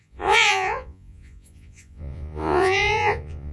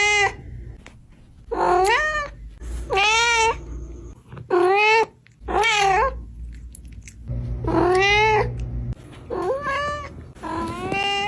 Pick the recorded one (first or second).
second